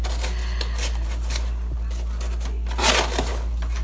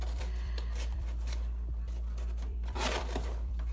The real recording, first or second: first